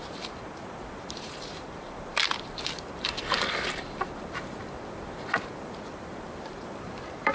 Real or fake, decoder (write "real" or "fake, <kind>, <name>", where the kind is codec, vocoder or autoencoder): fake, vocoder, BigVGAN v2